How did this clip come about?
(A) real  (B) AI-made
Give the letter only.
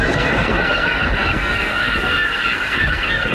B